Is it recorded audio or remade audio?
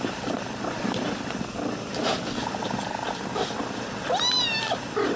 recorded